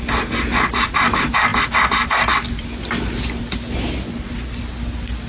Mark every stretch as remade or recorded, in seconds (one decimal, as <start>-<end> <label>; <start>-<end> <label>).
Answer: 0.0-5.3 recorded